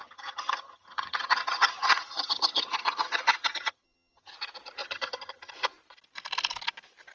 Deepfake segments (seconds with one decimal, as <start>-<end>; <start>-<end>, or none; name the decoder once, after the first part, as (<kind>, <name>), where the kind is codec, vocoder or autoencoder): 0.0-4.3 (vocoder, HiFi-GAN); 4.8-5.5